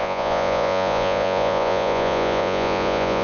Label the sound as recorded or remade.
remade